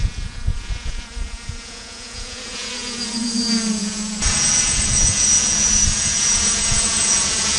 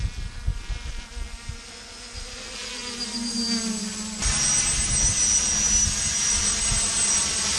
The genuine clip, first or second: second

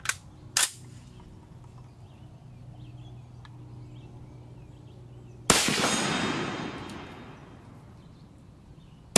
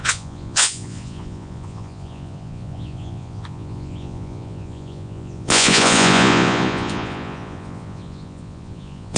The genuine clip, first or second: first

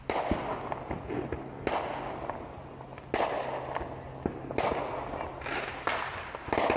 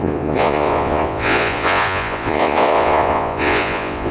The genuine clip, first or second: first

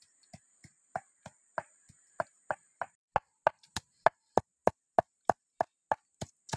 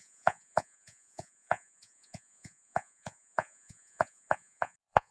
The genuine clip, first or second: first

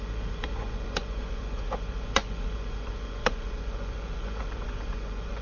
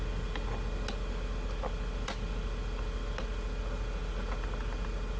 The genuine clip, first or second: second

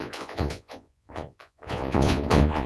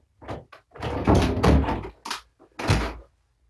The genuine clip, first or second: second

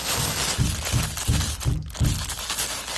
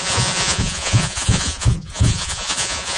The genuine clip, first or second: first